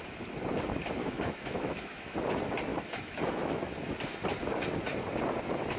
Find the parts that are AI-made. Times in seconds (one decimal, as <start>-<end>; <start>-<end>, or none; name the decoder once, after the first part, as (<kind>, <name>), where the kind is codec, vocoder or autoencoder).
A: 1.0-2.3 (autoencoder, DAC-VAE); 2.7-3.6